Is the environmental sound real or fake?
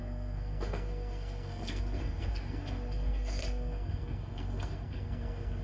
fake